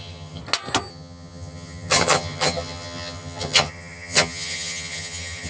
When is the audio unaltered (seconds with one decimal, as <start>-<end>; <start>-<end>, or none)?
0.4-0.9